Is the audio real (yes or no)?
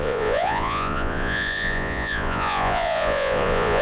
no